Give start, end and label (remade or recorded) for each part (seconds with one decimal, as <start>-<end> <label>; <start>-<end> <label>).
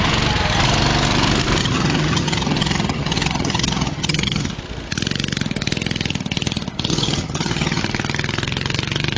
0.0-1.6 recorded; 1.6-4.5 remade; 4.5-6.9 recorded; 6.9-7.8 remade; 7.8-9.2 recorded